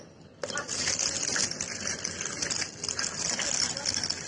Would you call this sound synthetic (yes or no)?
no